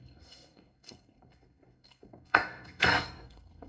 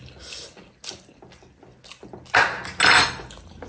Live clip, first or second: second